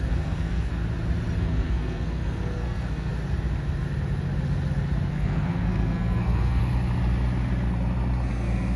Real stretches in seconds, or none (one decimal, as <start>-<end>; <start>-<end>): 0.7-1.4; 3.1-5.1; 6.6-8.3